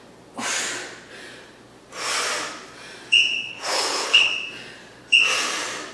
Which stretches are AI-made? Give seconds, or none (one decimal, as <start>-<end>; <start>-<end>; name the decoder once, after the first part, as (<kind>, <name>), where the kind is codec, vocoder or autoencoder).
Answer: 3.5-4.3 (codec, HILCodec)